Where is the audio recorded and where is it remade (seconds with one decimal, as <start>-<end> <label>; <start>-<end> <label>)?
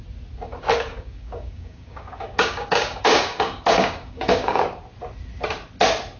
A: 0.0-0.9 recorded; 0.9-4.6 remade; 4.6-6.2 recorded